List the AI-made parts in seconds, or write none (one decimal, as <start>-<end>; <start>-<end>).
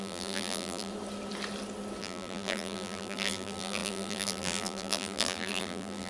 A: 0.0-0.9; 2.0-6.1